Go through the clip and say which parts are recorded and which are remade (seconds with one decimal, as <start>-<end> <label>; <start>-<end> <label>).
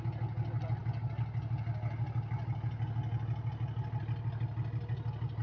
0.0-5.4 recorded